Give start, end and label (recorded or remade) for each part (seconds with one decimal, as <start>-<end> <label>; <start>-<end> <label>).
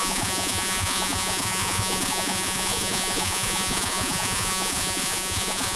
0.0-5.8 remade